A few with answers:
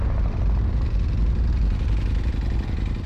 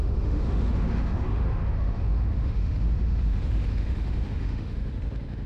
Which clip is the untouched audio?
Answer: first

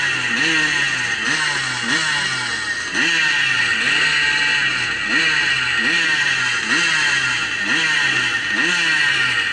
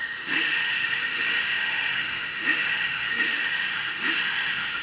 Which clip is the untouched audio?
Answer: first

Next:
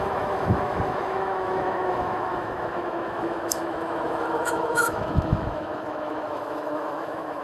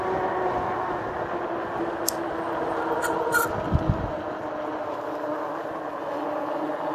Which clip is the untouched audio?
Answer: second